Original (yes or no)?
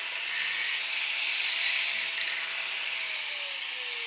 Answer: yes